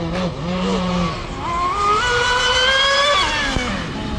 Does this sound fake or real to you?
real